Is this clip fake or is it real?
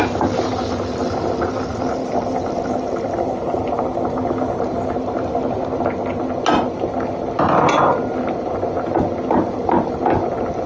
real